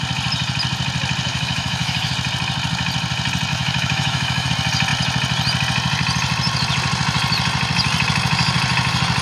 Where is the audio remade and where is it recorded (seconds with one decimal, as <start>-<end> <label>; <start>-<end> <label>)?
0.0-1.3 recorded; 1.3-2.1 remade; 2.1-3.5 recorded; 3.5-4.5 remade; 4.5-9.2 recorded